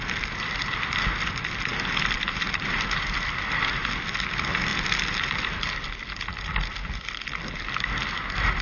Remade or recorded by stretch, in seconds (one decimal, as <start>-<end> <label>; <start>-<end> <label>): 0.0-8.6 recorded